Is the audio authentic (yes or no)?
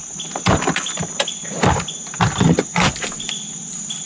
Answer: yes